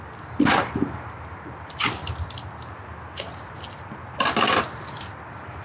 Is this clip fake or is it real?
real